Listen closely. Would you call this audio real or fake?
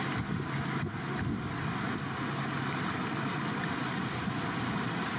real